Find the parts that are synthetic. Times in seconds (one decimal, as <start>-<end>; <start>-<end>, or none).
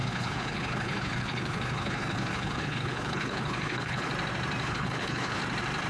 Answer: 0.0-4.1; 4.6-5.4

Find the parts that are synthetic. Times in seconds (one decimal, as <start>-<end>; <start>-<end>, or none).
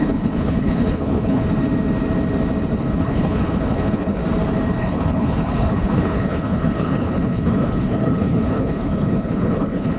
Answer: 0.0-1.4; 2.8-4.2; 4.8-10.0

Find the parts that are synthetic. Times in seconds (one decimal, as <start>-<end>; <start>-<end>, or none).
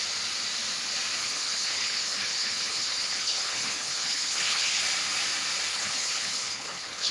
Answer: 1.2-4.8; 5.7-7.1